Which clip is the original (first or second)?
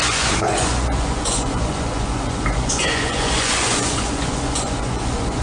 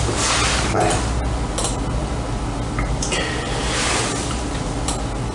second